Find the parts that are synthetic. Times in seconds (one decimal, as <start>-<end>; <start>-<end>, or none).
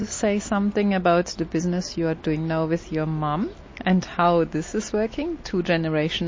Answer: none